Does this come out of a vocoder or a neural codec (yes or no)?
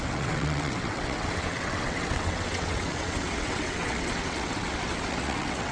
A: yes